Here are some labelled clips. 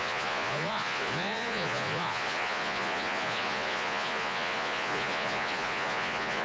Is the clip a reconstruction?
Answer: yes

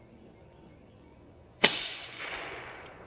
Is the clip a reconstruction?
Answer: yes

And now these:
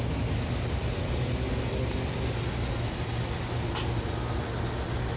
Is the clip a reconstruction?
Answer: no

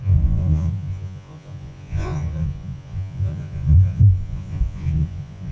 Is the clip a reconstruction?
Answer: yes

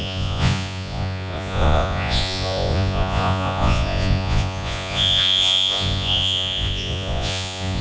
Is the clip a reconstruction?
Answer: yes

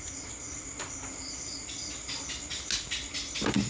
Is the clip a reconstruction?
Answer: no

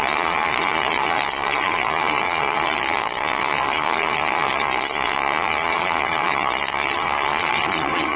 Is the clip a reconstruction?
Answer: yes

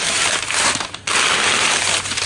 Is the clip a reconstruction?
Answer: no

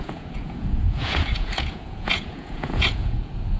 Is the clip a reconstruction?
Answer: yes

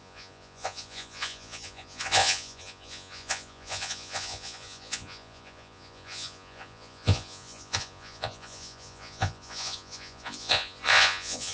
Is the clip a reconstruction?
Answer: yes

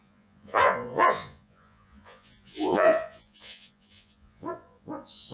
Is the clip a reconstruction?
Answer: yes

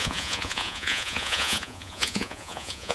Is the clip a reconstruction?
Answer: yes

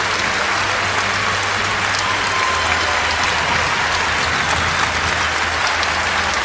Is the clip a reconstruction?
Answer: no